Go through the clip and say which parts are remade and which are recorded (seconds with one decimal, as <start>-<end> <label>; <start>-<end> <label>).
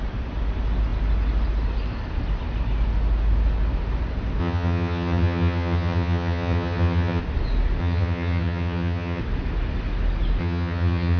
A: 0.0-4.4 recorded; 4.4-7.2 remade; 7.2-7.8 recorded; 7.8-9.2 remade; 9.2-10.4 recorded; 10.4-11.2 remade